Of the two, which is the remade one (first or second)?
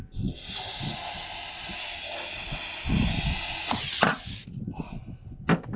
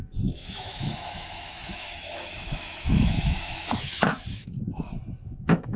second